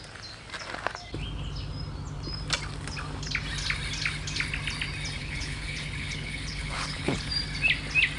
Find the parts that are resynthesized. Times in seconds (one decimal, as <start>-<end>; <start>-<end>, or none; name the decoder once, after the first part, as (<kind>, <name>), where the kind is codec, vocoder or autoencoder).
5.2-7.3 (codec, HILCodec)